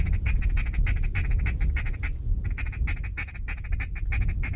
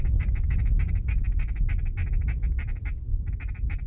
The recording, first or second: second